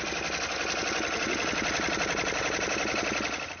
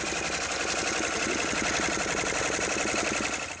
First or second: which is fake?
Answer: second